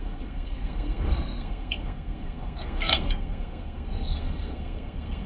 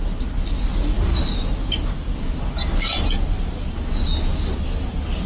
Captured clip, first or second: second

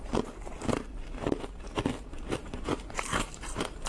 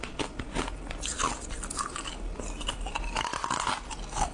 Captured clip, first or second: second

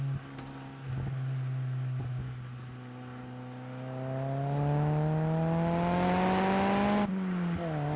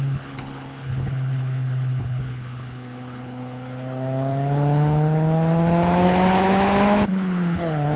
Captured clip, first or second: first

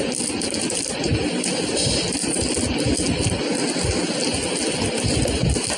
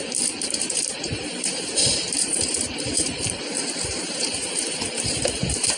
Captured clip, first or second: first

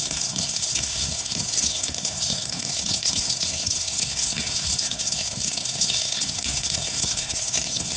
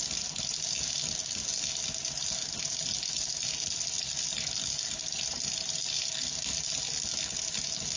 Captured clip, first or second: second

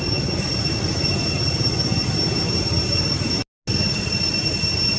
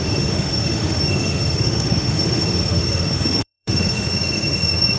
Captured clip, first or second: first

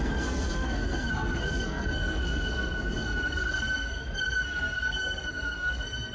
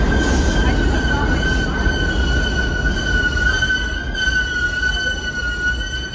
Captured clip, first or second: second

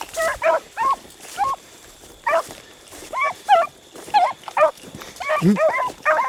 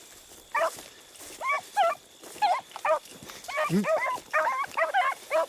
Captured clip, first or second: second